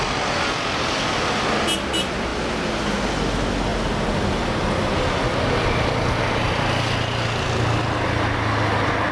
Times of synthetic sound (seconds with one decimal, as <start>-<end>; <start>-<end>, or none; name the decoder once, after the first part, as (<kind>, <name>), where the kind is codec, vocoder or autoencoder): none